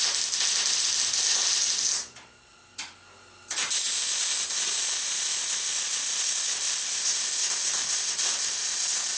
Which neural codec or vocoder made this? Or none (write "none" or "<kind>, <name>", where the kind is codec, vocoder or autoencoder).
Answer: none